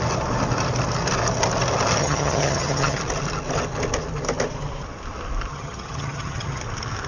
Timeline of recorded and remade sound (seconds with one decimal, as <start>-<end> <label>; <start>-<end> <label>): 0.0-2.0 recorded; 2.0-3.0 remade; 3.0-5.5 recorded; 5.5-6.6 remade; 6.6-7.1 recorded